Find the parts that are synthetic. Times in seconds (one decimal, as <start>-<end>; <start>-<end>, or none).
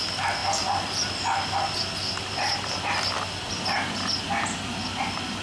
none